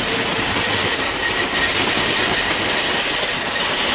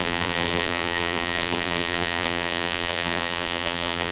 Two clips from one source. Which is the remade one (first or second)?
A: second